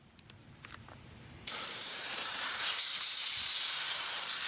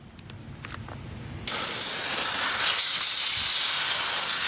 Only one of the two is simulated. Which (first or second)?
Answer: first